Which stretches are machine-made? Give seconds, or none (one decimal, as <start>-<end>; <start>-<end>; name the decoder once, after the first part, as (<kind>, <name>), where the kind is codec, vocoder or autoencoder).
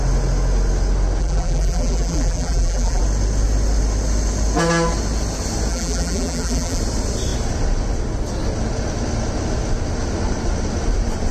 1.2-3.0 (vocoder, BigVGAN v2); 5.7-6.8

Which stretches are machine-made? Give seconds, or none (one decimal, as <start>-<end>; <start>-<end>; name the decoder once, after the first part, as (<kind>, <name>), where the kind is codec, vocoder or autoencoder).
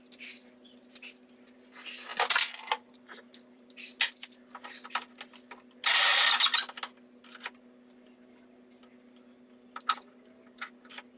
2.1-3.7 (vocoder, BigVGAN v2)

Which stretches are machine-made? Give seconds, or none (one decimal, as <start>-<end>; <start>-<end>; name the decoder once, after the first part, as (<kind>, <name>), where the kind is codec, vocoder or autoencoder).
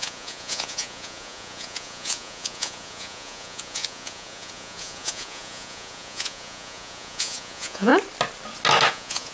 0.0-7.9 (vocoder, Vocos); 8.9-9.3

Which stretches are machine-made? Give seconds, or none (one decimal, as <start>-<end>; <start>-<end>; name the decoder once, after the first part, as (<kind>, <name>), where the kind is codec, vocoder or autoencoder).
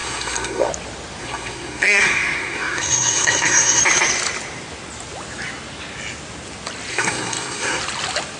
0.0-0.7 (codec, SNAC); 1.2-3.8; 6.9-7.8